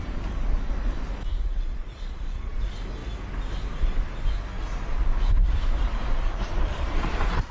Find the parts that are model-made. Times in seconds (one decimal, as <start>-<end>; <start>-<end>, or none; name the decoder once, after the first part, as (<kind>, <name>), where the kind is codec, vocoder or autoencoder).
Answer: 1.3-2.6 (vocoder, Vocos); 6.7-7.5